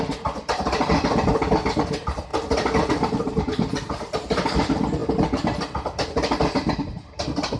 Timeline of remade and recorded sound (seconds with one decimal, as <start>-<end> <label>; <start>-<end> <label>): 0.0-7.6 recorded